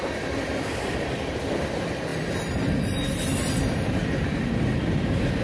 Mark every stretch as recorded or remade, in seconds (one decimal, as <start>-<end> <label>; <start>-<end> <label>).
0.0-2.1 remade; 2.1-2.8 recorded; 2.8-5.4 remade